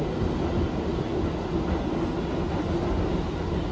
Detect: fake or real real